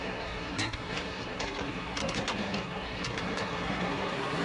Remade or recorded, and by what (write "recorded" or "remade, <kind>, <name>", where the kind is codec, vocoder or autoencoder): remade, codec, SNAC